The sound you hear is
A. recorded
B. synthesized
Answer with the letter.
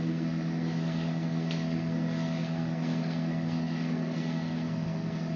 B